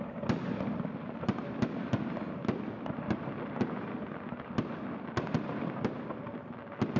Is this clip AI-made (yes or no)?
no